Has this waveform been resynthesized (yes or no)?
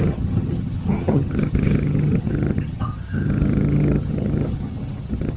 yes